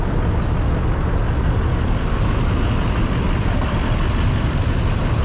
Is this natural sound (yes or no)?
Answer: yes